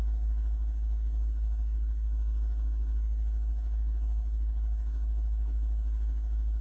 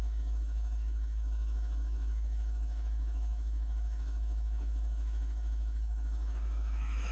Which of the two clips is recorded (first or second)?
first